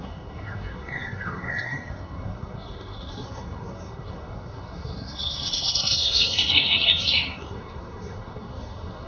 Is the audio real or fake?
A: fake